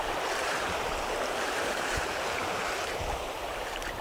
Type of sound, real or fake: fake